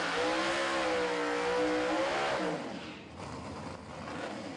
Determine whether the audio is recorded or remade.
recorded